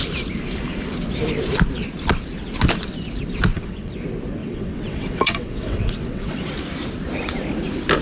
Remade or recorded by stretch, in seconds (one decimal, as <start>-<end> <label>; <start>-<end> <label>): 0.0-3.5 recorded; 3.5-4.0 remade; 4.0-4.4 recorded; 4.4-6.5 remade; 6.5-8.0 recorded